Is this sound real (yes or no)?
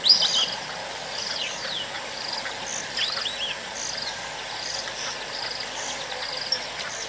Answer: yes